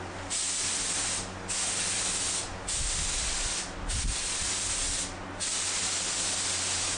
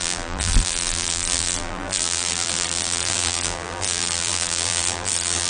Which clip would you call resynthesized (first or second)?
second